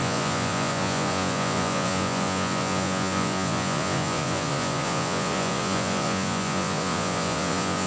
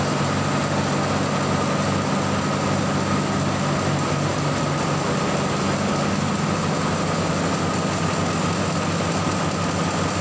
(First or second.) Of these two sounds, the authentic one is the second